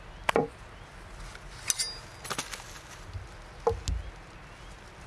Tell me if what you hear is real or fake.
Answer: real